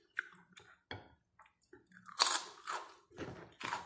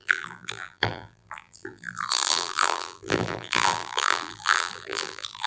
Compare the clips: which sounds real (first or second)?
first